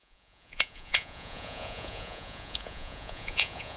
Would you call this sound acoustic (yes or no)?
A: no